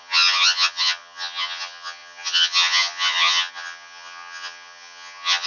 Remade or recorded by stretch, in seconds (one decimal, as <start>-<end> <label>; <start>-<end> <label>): 0.0-5.5 remade